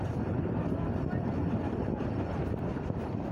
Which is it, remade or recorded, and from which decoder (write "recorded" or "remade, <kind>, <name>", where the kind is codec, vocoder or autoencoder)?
recorded